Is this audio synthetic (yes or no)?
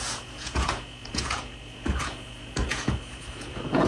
yes